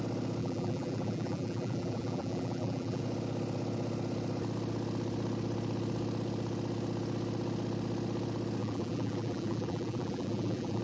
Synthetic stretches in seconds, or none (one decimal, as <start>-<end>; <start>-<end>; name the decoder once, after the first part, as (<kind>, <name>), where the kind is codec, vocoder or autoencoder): 0.4-3.0 (vocoder, BigVGAN v2); 8.6-10.8